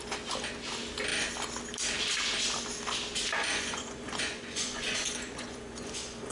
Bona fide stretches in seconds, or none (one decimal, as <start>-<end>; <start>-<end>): 0.0-3.4